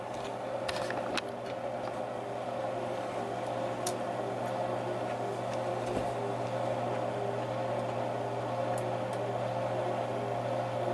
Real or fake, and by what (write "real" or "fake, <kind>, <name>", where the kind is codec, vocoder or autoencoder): real